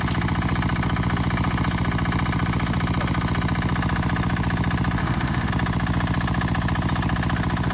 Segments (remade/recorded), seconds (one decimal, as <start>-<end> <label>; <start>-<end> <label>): 0.0-5.0 recorded; 5.0-5.5 remade; 5.5-7.7 recorded

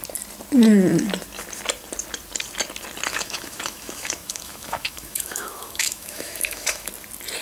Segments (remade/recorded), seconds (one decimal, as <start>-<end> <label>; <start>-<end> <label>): 0.0-3.1 recorded; 3.1-6.9 remade; 6.9-7.4 recorded

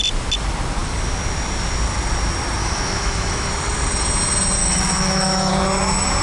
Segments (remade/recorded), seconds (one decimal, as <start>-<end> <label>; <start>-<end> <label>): 0.0-2.6 recorded; 2.6-3.5 remade; 3.5-4.6 recorded; 4.6-5.5 remade; 5.5-6.2 recorded

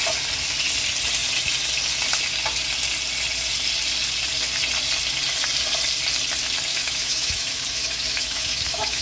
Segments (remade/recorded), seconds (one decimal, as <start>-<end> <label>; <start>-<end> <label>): 0.0-6.7 recorded; 6.7-9.0 remade

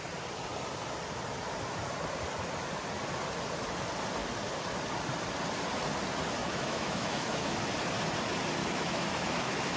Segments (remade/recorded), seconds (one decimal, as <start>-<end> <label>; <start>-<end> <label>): 0.0-6.4 recorded; 6.4-7.5 remade; 7.5-8.6 recorded; 8.6-9.8 remade

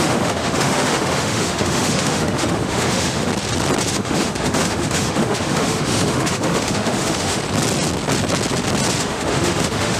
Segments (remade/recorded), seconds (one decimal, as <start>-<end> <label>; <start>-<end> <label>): 0.0-3.3 remade; 3.3-3.9 recorded; 3.9-7.4 remade; 7.4-9.0 recorded; 9.0-10.0 remade

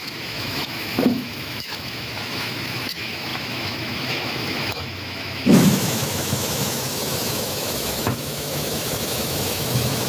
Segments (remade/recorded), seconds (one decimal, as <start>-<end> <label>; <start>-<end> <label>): 0.0-10.1 remade

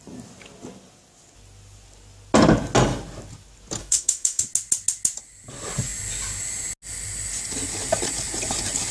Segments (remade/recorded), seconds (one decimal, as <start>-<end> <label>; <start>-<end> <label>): 0.0-3.8 recorded; 3.8-4.4 remade; 4.4-8.9 recorded